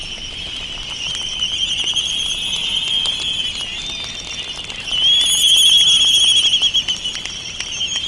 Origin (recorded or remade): recorded